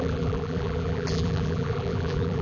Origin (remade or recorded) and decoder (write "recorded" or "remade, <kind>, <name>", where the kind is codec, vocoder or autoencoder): remade, vocoder, BigVGAN v2